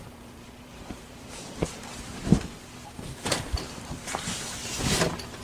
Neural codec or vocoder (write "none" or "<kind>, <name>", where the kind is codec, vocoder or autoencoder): vocoder, BigVGAN v2